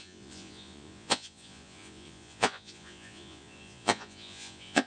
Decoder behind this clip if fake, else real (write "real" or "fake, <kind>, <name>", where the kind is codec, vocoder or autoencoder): fake, vocoder, Vocos